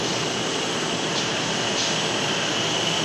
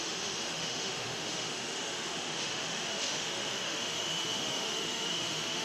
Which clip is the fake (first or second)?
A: second